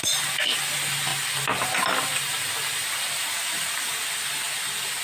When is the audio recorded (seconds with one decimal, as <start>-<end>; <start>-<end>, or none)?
0.0-5.0